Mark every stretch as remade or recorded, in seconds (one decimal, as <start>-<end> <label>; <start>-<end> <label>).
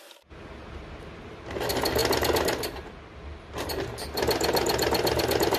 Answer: 0.0-5.6 recorded